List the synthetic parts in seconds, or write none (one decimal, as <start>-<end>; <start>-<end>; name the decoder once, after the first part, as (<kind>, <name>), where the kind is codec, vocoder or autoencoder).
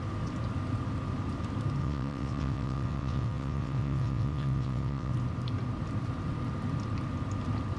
1.8-5.1 (vocoder, WaveNeXt)